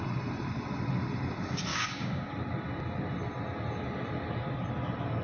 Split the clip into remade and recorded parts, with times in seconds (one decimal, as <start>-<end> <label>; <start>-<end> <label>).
0.0-1.7 recorded; 1.7-2.3 remade; 2.3-5.2 recorded

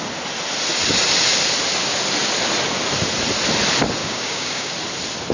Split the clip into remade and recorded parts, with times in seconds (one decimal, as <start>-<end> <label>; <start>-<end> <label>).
0.0-4.0 recorded; 4.0-4.7 remade; 4.7-5.3 recorded

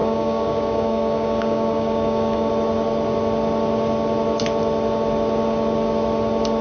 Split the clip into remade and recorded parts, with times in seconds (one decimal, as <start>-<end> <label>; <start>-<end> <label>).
0.0-2.5 remade; 2.5-6.6 recorded

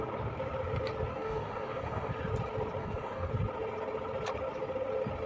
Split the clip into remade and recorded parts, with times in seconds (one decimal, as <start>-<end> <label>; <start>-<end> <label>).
0.0-1.1 recorded; 1.1-2.1 remade; 2.1-2.8 recorded; 2.8-3.3 remade; 3.3-5.3 recorded

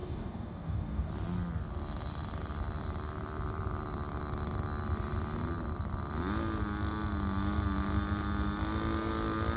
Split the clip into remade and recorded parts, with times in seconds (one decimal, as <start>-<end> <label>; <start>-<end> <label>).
0.0-1.1 remade; 1.1-9.6 recorded

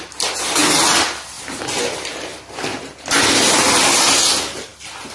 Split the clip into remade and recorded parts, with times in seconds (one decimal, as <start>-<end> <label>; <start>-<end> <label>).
0.0-5.1 recorded